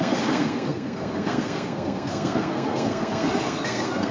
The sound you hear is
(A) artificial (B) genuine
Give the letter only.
A